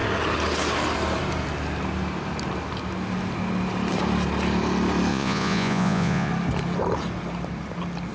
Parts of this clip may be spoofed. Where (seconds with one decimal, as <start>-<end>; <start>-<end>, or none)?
5.1-6.3